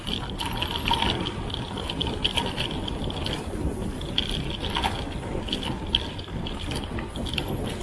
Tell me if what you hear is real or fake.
real